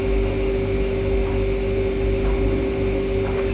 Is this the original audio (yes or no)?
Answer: yes